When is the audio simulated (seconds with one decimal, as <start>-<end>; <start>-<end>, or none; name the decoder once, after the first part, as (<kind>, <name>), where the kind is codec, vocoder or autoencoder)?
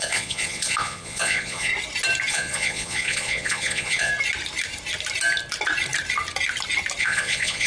0.0-1.7 (vocoder, Vocos); 2.3-4.1; 7.0-7.7